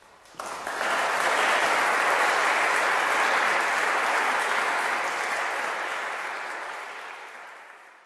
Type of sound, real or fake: real